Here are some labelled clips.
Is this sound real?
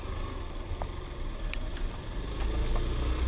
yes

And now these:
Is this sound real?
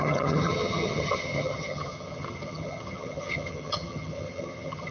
no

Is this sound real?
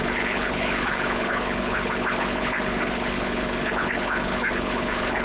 no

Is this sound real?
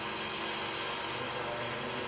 yes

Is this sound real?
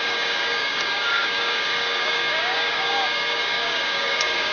no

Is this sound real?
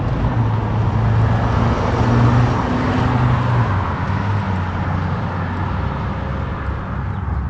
yes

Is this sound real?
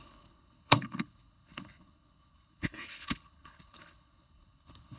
no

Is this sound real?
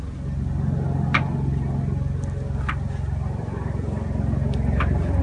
yes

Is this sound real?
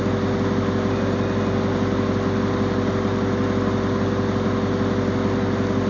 yes